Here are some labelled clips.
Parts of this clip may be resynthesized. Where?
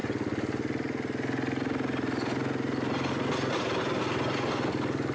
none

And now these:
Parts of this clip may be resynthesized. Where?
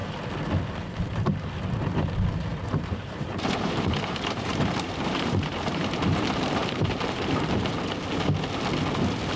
2.5-7.7 (vocoder, BigVGAN v2)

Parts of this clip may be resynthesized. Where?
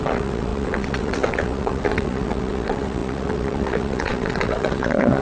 0.0-5.2 (vocoder, WaveNeXt)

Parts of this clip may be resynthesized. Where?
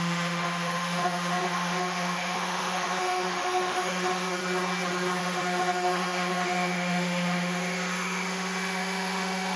0.0-4.4 (autoencoder, DAC-VAE); 5.2-9.6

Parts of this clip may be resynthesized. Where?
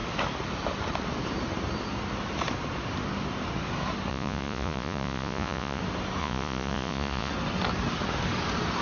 4.1-5.8 (vocoder, Vocos); 6.2-7.3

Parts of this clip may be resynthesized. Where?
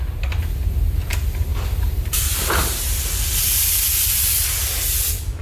1.5-2.4 (vocoder, BigVGAN v2)